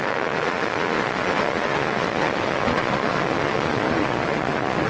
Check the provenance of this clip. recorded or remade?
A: remade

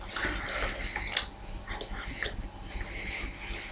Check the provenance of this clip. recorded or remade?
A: recorded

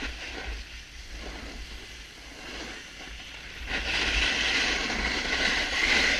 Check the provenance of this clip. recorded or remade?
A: recorded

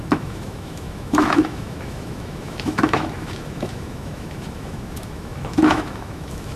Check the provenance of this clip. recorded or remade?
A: remade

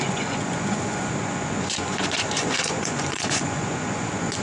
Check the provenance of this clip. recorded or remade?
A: remade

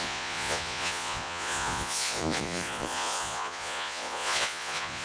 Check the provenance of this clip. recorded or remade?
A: remade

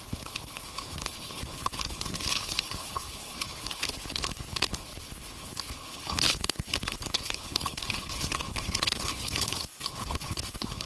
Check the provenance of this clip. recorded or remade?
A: remade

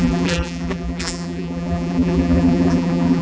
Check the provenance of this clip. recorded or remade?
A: remade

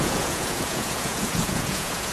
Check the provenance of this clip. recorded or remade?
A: remade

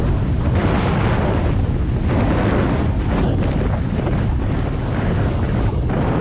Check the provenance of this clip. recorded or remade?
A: recorded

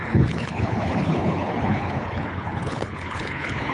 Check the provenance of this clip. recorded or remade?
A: remade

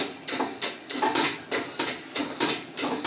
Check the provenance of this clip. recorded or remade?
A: recorded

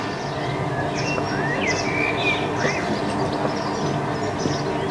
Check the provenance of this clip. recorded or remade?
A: recorded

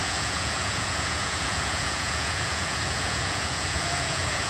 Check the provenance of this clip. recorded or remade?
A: remade